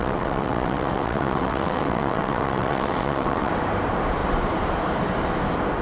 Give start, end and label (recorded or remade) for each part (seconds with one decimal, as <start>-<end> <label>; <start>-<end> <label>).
0.0-3.5 remade; 3.5-5.8 recorded